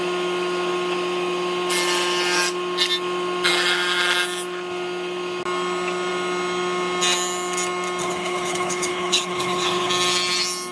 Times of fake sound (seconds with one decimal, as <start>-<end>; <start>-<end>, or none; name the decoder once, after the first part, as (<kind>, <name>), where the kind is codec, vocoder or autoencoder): 8.0-9.9 (codec, HILCodec)